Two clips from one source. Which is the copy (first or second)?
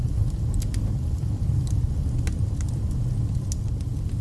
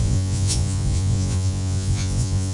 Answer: second